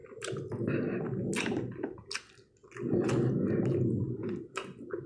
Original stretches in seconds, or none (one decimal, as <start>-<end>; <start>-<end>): 0.0-5.1